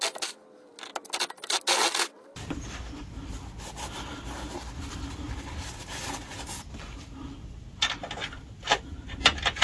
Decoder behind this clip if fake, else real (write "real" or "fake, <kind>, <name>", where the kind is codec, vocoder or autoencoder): real